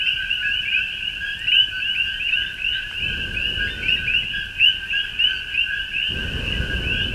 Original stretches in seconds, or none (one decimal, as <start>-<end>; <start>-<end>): 3.4-4.7